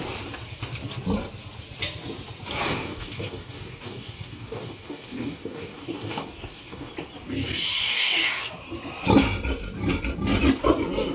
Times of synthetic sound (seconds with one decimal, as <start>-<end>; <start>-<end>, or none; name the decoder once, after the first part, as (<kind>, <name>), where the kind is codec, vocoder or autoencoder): 2.6-6.9 (codec, DAC); 7.8-8.5